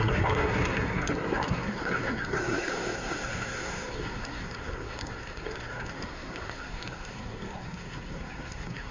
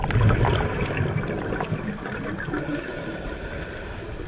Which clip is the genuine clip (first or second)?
second